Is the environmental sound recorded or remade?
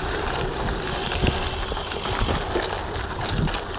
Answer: recorded